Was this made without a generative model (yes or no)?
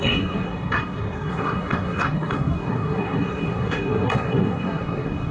no